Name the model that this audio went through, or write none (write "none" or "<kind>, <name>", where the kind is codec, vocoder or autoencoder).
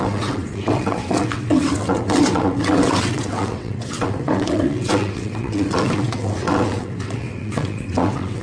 vocoder, WaveNeXt